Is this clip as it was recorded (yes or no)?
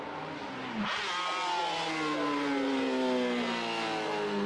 yes